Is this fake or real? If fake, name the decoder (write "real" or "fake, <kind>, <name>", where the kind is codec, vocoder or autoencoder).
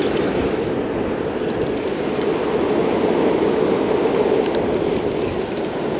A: real